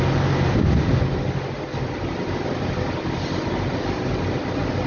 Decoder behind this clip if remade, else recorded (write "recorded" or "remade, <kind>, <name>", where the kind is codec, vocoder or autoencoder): recorded